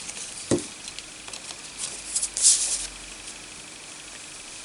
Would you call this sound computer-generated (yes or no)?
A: no